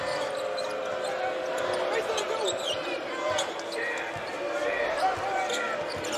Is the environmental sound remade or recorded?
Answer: recorded